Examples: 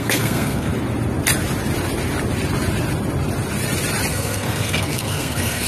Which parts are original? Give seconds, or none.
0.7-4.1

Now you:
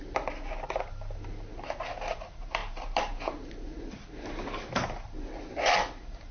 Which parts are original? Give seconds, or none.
0.0-6.3

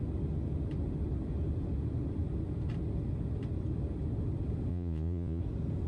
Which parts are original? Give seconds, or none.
0.0-4.7; 5.4-5.9

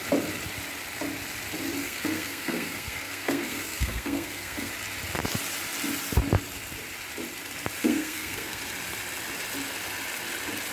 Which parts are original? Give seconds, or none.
0.0-1.8; 4.7-7.8; 8.6-10.7

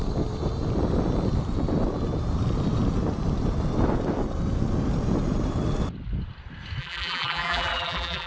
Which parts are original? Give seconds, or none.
0.0-6.8

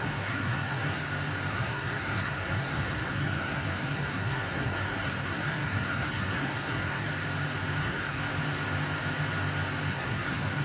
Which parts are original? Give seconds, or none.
1.0-1.5; 7.1-7.8; 8.2-9.9

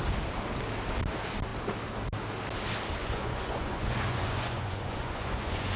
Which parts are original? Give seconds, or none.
0.0-3.0